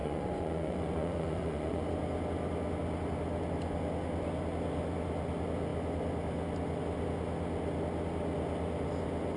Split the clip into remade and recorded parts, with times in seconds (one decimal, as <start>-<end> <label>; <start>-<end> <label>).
0.0-1.8 remade; 1.8-9.4 recorded